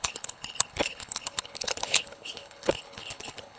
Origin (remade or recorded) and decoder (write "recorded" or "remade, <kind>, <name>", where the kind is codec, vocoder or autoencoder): remade, codec, HILCodec